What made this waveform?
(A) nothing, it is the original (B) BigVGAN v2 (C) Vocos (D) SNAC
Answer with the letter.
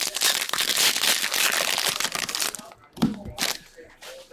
A